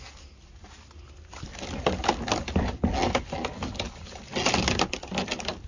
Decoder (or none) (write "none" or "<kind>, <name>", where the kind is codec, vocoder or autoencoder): none